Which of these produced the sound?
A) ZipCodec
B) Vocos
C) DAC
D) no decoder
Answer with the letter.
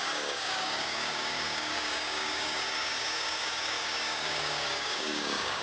C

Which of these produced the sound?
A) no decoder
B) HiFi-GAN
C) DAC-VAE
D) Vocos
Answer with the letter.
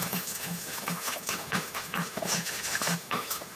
C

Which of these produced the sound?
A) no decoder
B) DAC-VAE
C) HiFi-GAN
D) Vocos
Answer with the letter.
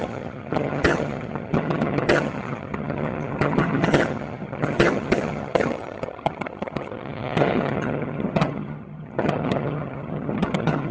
C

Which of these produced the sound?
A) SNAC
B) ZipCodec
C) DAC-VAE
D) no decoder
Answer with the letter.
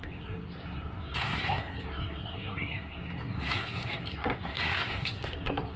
A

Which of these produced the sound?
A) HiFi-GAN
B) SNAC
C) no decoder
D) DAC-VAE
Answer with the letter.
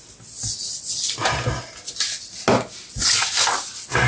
C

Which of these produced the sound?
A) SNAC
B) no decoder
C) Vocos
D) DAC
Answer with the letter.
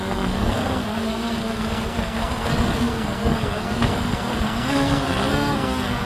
A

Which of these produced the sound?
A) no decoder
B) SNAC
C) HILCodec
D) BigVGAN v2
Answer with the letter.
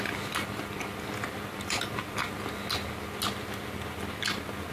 A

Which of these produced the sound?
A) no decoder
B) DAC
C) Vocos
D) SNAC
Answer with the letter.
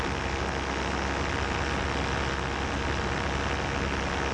A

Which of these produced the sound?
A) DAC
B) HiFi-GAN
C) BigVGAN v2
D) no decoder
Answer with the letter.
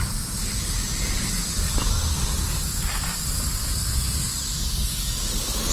D